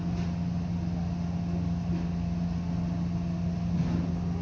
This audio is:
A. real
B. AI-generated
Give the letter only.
A